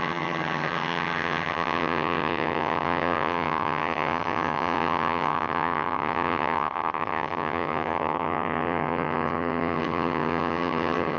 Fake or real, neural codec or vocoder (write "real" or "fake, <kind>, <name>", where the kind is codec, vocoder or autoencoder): fake, vocoder, HiFi-GAN